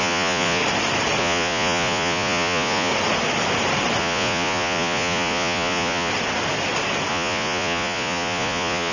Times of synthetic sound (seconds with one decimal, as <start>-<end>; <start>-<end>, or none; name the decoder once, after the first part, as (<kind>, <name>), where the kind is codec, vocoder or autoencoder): 0.0-0.6 (vocoder, Vocos); 1.2-2.9; 4.0-6.1; 7.1-8.9

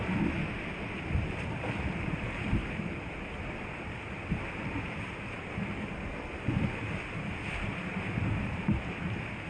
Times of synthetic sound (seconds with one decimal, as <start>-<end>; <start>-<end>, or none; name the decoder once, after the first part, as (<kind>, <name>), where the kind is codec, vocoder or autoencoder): none